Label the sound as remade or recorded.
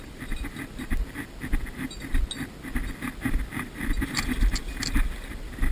recorded